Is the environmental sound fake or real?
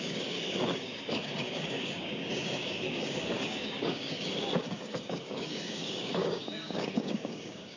fake